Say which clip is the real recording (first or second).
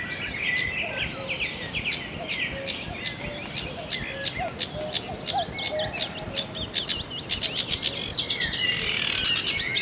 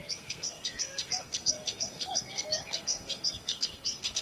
first